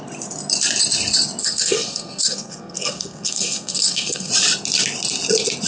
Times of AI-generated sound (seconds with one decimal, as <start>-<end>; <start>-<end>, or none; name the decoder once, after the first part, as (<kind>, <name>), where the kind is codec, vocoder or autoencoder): 1.4-4.3 (codec, SNAC)